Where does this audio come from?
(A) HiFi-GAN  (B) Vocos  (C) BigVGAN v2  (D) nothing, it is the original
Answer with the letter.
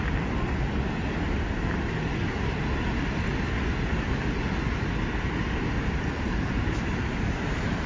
D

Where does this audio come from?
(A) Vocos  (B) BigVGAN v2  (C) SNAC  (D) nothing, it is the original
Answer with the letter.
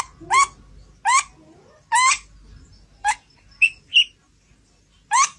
D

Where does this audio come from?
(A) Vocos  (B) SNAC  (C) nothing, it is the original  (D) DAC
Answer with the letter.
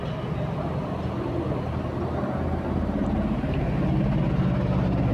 C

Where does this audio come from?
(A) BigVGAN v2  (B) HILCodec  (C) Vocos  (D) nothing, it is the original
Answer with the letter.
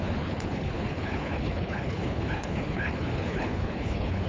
B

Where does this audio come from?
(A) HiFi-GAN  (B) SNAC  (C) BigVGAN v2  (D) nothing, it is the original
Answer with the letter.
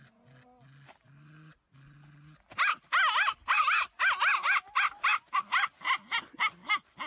D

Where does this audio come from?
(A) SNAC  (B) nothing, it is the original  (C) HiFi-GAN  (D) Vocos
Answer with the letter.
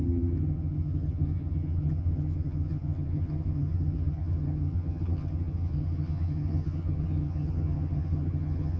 C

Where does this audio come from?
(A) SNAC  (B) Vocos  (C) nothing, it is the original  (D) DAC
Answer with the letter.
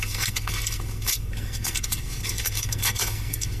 A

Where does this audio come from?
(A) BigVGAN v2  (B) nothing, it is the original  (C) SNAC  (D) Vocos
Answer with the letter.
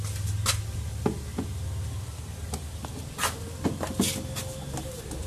B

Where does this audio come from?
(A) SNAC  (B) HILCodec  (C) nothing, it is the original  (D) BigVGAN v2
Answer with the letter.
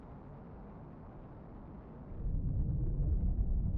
C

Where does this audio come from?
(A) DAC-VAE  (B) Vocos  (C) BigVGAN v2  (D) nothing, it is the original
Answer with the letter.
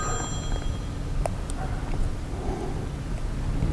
D